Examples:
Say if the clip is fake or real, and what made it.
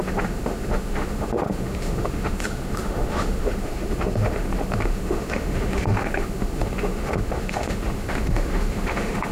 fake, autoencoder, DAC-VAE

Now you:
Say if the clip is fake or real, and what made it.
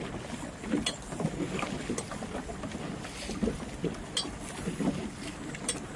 real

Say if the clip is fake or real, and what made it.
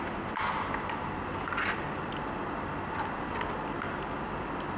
real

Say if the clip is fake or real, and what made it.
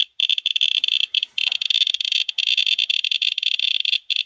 real